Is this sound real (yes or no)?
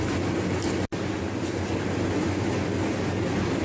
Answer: yes